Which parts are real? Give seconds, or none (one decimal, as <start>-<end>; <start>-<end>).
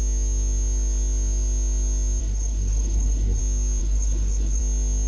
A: 0.0-2.2; 3.4-3.8; 4.6-5.1